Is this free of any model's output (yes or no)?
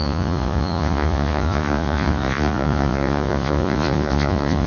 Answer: no